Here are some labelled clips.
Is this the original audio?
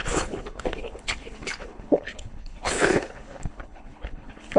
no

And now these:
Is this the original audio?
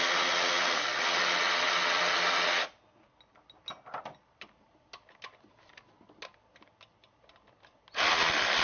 yes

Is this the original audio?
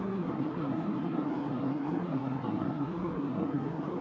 no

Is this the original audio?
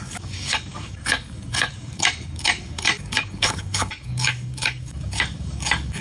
no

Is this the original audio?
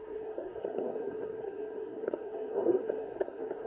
no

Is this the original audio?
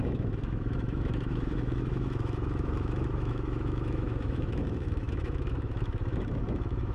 no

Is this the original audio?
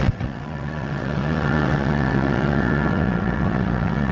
no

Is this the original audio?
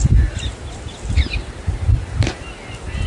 yes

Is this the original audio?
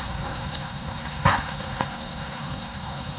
no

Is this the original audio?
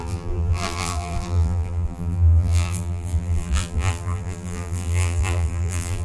no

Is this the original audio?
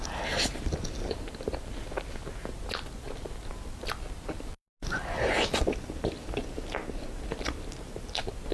yes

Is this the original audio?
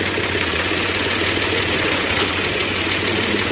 no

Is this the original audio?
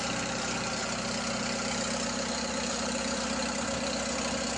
yes